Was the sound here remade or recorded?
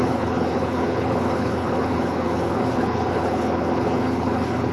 remade